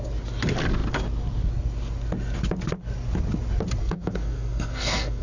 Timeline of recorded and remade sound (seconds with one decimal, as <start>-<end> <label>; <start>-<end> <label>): 0.0-3.8 recorded; 3.8-5.2 remade